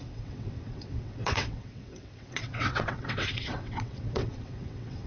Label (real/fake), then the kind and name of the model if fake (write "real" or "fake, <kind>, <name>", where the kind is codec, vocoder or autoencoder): fake, vocoder, WaveNeXt